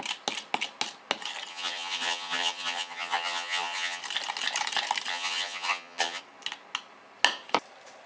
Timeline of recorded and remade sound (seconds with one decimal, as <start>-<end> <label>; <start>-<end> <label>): 0.0-1.5 recorded; 1.5-4.0 remade; 4.0-5.1 recorded; 5.1-6.2 remade; 6.2-8.1 recorded